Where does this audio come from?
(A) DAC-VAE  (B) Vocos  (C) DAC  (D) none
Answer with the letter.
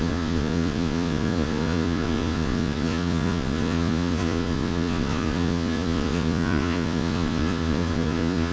B